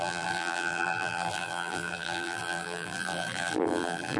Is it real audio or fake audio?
fake